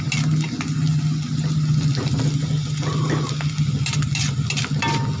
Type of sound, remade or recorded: recorded